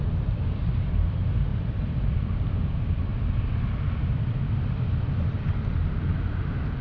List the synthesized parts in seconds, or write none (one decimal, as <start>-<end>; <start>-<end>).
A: 0.0-3.1; 5.7-6.8